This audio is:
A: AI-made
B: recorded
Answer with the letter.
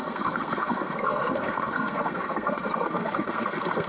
A